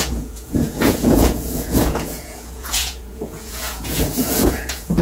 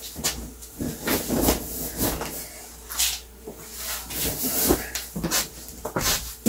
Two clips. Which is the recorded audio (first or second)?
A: second